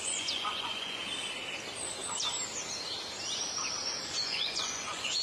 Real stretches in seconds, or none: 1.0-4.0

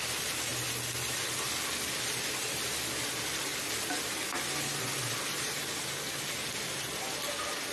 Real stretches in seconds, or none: 0.0-7.7

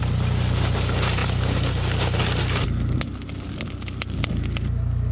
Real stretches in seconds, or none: 0.0-5.1